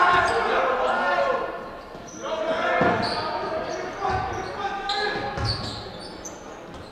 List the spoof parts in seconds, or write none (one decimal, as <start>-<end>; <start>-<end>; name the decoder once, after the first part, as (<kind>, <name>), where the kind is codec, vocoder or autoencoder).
none